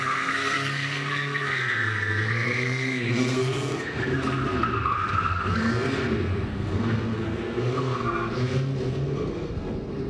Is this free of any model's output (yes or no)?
no